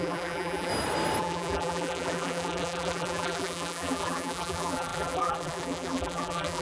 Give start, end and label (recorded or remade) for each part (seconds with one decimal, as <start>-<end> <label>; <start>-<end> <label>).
0.0-0.7 remade; 0.7-1.2 recorded; 1.2-6.6 remade